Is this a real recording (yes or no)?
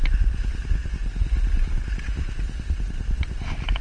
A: yes